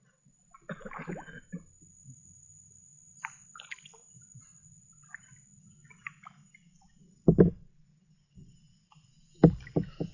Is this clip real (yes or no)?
yes